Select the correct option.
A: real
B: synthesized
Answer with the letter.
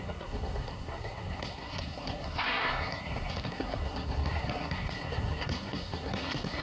B